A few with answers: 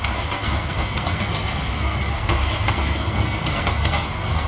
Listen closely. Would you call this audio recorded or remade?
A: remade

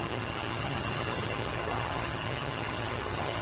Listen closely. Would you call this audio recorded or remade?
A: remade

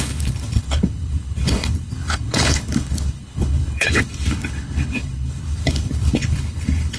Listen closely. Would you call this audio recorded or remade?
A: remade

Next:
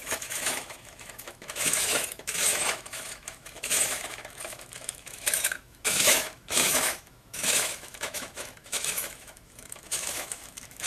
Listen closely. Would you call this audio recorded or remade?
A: remade